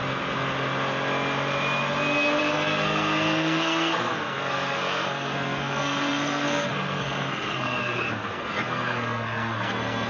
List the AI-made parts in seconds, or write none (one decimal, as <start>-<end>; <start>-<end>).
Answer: 2.4-10.1